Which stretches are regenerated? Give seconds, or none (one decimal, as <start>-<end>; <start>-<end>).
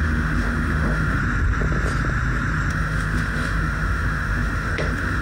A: 0.0-1.2; 2.7-5.2